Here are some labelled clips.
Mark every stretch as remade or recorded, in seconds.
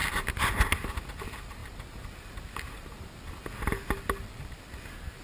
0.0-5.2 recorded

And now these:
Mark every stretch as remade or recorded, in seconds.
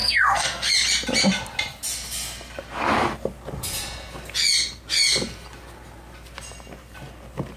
0.0-0.7 remade; 0.7-7.6 recorded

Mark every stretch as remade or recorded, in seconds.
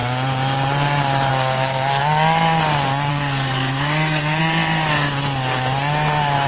0.0-1.3 recorded; 1.3-2.0 remade; 2.0-3.1 recorded; 3.1-4.4 remade; 4.4-6.5 recorded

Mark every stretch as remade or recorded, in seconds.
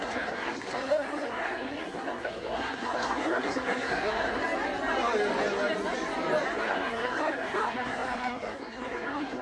0.0-4.4 remade; 4.4-6.6 recorded; 6.6-9.4 remade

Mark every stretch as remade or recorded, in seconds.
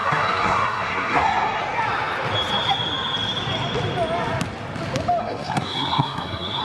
0.0-1.6 remade; 1.6-5.2 recorded; 5.2-6.6 remade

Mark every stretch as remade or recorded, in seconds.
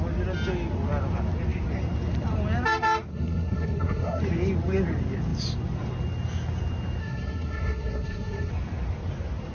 0.0-3.1 recorded; 3.1-4.2 remade; 4.2-7.0 recorded; 7.0-8.5 remade; 8.5-9.5 recorded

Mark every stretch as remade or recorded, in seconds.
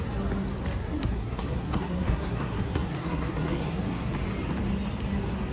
0.0-0.8 recorded; 0.8-4.1 remade; 4.1-5.5 recorded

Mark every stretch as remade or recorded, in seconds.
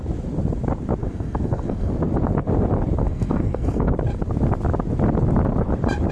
0.0-1.0 recorded; 1.0-1.9 remade; 1.9-3.0 recorded; 3.0-3.9 remade; 3.9-6.1 recorded